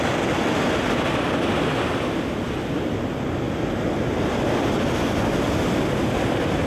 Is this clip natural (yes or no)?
yes